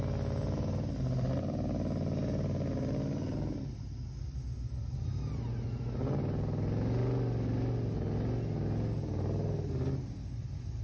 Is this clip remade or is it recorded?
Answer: recorded